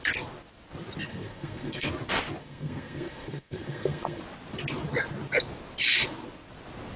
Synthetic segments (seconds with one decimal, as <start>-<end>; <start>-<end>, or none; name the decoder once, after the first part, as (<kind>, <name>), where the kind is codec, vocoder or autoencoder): 1.1-1.9 (codec, SNAC); 2.4-4.2